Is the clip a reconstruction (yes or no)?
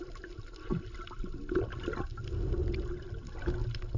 no